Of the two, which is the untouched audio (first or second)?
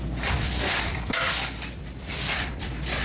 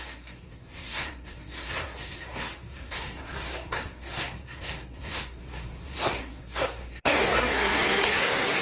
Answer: first